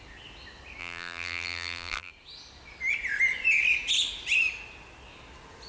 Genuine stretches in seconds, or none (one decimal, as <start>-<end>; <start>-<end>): 0.0-0.8; 2.1-5.7

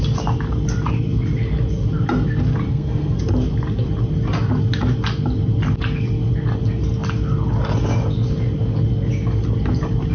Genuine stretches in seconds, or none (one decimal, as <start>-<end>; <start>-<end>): 0.0-2.7; 3.2-10.1

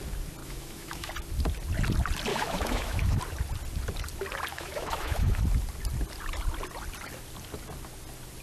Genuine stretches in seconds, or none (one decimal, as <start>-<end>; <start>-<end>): 0.0-0.4; 1.1-2.3; 3.2-4.5; 5.4-8.4

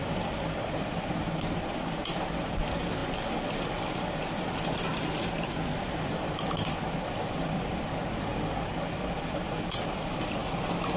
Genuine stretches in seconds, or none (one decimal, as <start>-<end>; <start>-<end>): 2.6-3.0; 7.9-8.3; 10.6-11.0